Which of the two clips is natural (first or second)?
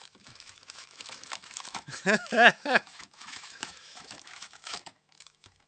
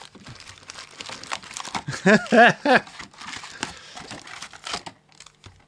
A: second